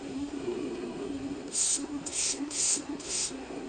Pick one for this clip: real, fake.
fake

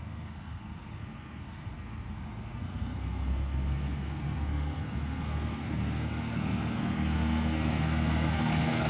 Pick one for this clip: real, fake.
fake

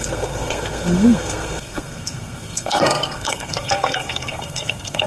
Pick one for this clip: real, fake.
fake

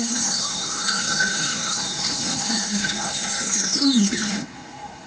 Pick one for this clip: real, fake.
fake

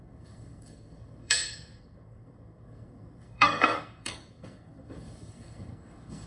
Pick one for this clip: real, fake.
fake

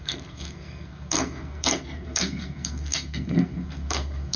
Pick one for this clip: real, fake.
fake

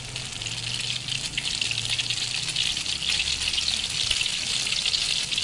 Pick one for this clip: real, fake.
real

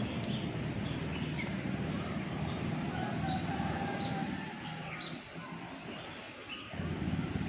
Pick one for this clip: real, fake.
real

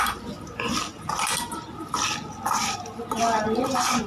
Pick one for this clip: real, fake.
real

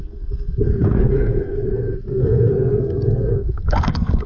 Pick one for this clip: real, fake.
fake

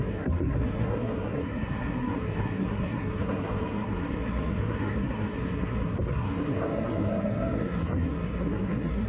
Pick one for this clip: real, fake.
fake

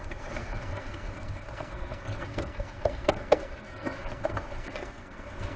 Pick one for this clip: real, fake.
fake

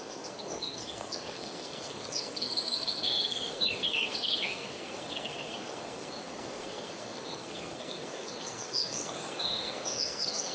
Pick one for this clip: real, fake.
fake